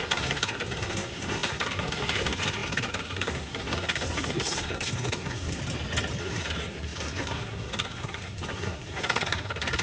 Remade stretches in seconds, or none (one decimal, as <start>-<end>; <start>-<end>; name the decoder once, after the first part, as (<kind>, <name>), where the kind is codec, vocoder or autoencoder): 0.0-5.6 (codec, SNAC); 6.2-9.8